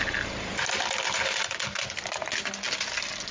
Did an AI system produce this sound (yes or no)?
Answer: no